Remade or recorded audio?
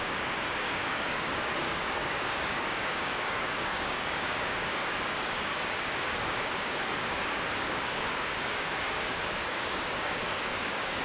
remade